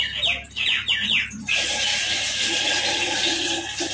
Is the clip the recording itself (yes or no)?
yes